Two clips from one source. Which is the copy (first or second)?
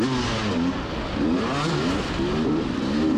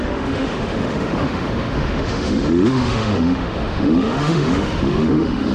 second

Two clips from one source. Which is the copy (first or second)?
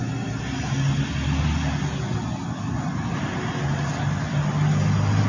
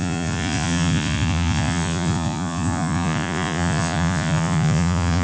second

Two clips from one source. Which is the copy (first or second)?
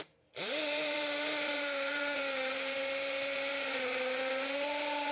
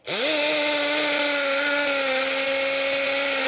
first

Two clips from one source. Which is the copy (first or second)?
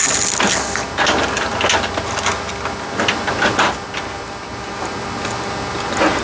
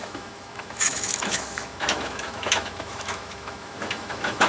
second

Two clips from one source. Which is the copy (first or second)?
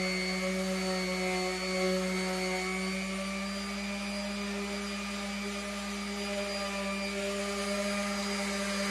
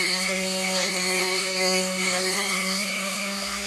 second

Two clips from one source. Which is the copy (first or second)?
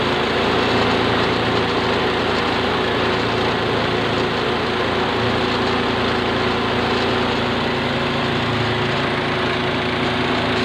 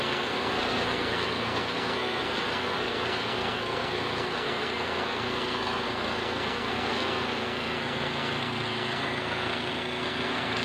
second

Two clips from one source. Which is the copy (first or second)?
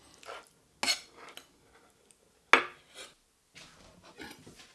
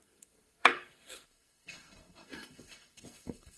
second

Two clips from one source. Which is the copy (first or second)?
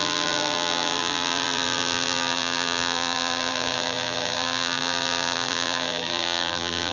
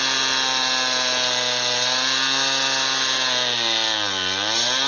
first